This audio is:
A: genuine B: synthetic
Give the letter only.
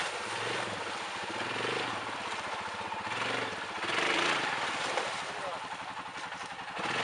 A